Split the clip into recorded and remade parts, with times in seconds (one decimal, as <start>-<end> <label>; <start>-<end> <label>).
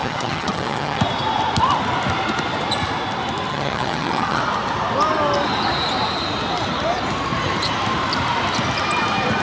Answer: 0.0-1.0 remade; 1.0-3.5 recorded; 3.5-4.4 remade; 4.4-9.4 recorded